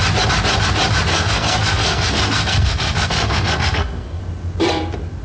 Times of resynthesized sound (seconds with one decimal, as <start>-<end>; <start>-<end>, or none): 1.1-4.2